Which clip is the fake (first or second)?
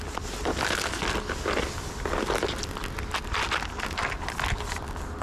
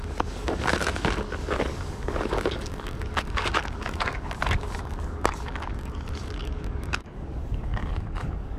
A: second